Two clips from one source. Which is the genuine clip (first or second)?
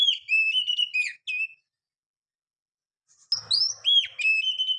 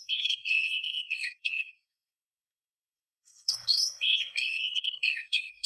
first